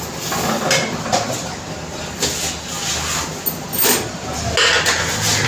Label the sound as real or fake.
real